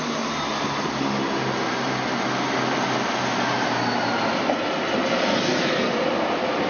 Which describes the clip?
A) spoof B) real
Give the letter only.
B